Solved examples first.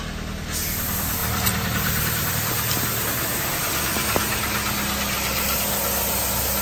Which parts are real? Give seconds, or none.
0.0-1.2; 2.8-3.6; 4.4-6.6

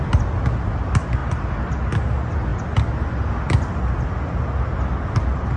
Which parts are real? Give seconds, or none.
0.0-5.6